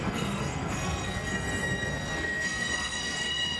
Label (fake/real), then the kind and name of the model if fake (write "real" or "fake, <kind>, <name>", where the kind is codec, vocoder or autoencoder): fake, codec, SNAC